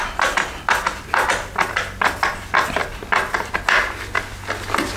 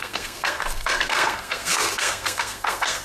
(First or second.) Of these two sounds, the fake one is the second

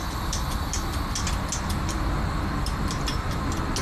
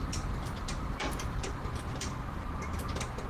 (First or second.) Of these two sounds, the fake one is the second